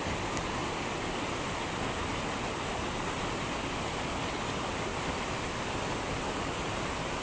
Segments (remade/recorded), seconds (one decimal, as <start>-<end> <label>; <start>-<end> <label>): 0.0-7.2 recorded